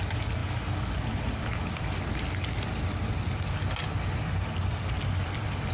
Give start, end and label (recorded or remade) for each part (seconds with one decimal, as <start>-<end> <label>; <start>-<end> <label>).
0.0-5.7 recorded